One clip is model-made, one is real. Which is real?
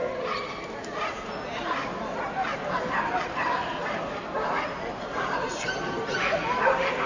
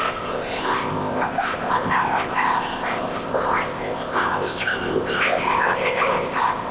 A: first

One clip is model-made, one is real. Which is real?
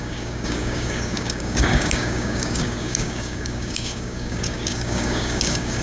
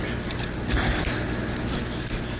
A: second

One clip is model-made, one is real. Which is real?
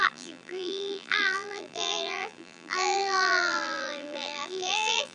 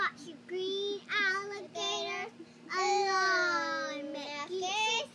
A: second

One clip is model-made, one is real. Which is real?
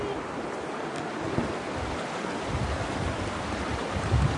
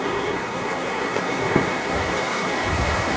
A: first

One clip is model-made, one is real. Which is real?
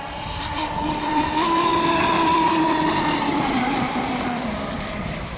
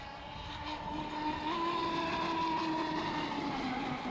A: second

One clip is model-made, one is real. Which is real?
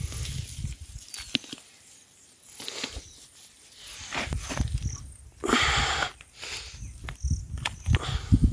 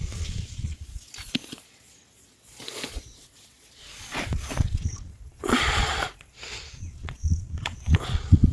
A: first